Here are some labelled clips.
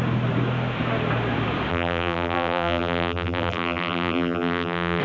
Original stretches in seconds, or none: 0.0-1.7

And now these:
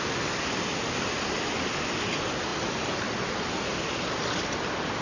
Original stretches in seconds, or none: 0.0-5.0

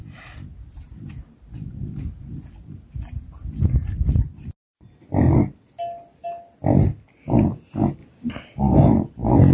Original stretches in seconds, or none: 0.0-9.5

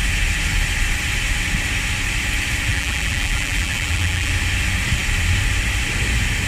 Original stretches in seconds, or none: 0.0-2.7; 4.3-6.5